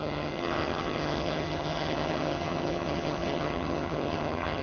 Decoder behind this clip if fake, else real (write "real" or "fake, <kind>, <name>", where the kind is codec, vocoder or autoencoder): fake, vocoder, HiFi-GAN